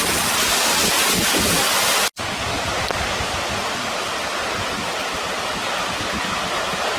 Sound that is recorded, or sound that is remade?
recorded